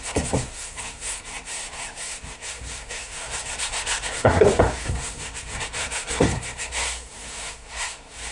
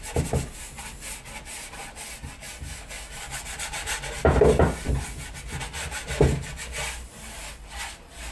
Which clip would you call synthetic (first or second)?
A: first